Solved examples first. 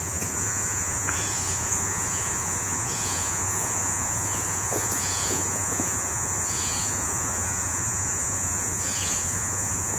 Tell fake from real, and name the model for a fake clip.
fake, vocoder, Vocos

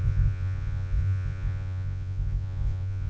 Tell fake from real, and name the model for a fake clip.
fake, vocoder, Vocos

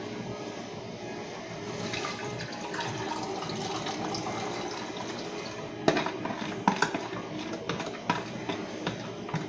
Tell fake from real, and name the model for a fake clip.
real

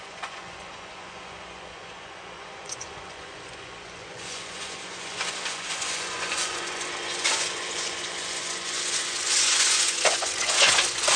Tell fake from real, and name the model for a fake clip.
fake, vocoder, Vocos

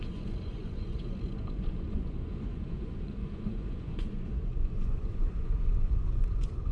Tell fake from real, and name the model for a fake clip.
fake, vocoder, Vocos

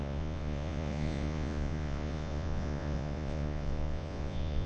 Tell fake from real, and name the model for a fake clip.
fake, vocoder, Vocos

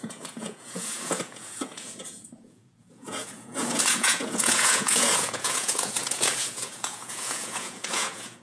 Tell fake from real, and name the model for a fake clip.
fake, vocoder, Vocos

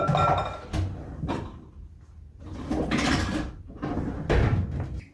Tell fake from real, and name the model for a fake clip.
real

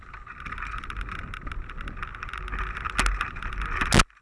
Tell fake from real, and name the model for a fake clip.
real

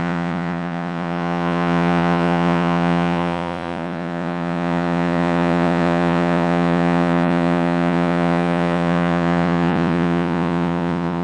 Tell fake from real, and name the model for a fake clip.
fake, vocoder, Vocos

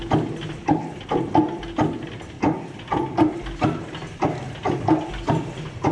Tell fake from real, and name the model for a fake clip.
real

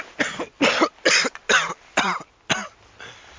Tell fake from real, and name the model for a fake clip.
real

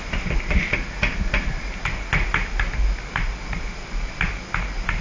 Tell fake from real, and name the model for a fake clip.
real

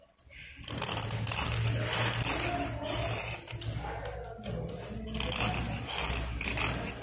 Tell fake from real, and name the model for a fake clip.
real